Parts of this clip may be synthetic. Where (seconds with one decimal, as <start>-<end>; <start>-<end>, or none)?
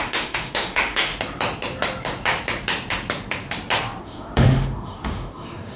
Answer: 0.0-1.1; 4.0-5.8